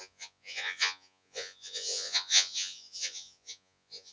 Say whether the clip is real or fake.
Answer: fake